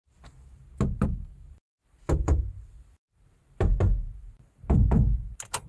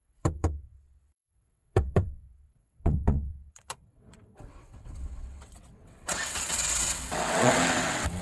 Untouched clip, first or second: first